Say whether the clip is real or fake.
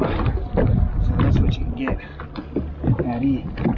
real